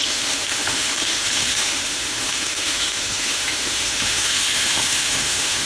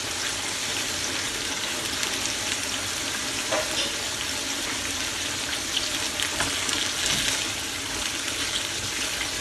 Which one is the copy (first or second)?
first